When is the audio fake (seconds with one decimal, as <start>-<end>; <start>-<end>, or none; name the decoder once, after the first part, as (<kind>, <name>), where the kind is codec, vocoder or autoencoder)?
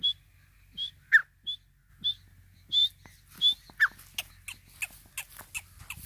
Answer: none